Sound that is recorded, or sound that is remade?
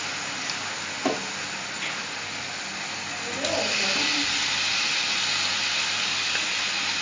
recorded